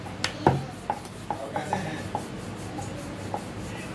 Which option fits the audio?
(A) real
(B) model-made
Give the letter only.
A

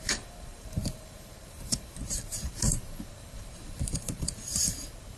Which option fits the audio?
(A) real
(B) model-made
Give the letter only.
B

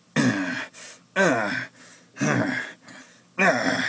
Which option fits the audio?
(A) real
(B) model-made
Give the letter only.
A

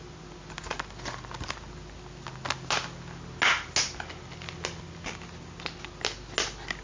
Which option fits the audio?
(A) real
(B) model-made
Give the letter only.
A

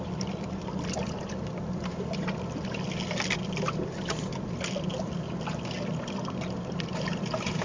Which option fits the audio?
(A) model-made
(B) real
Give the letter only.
A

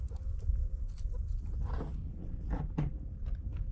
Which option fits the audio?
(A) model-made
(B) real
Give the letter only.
B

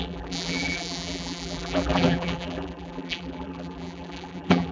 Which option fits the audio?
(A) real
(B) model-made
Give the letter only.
B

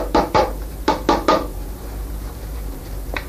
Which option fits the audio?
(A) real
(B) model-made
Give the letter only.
B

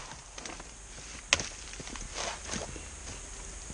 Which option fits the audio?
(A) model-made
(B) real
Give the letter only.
B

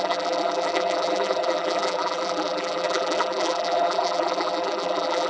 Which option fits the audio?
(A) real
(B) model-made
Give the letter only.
B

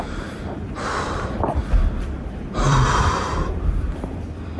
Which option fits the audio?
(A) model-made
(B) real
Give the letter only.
A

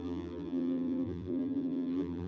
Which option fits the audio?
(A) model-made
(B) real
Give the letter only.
A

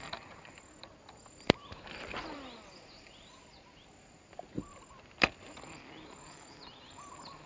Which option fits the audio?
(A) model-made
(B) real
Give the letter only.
A